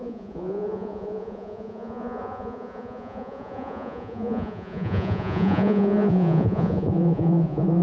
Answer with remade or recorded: remade